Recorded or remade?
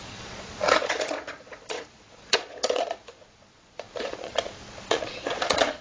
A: remade